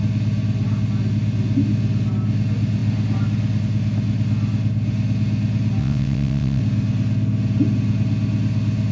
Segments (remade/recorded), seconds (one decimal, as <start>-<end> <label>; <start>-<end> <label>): 0.0-5.8 recorded; 5.8-6.6 remade; 6.6-8.9 recorded